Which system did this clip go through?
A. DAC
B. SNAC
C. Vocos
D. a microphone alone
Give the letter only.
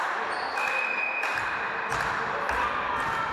D